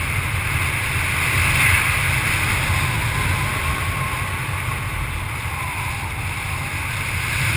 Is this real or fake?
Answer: real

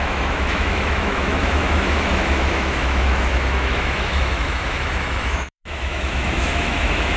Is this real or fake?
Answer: fake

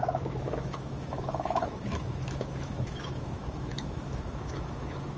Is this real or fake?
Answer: fake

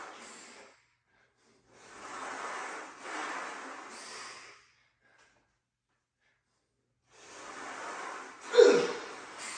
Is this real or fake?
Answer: real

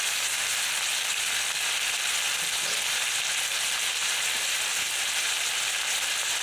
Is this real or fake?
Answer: real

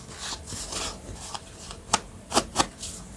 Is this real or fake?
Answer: real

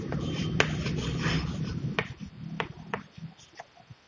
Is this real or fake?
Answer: real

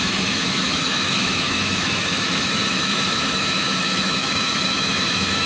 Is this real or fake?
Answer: fake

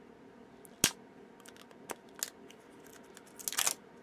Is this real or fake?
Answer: real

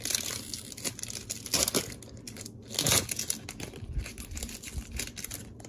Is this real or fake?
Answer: real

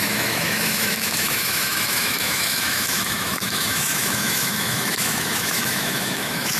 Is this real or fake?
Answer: fake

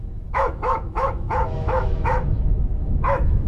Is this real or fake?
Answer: fake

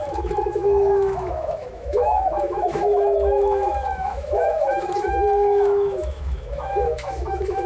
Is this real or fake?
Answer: fake